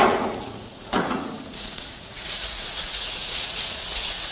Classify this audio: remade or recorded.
remade